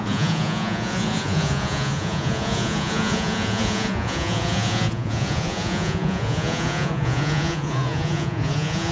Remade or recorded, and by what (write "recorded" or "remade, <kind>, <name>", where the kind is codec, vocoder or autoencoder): remade, vocoder, Vocos